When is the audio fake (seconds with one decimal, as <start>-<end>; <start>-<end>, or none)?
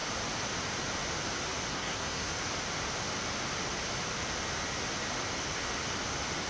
1.7-2.3